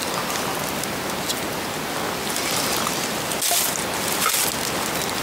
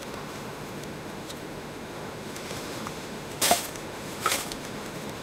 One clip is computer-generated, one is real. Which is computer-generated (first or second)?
second